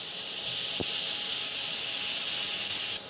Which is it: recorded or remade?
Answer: recorded